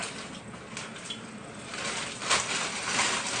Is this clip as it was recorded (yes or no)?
yes